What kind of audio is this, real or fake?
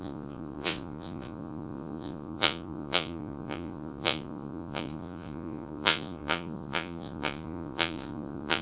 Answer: fake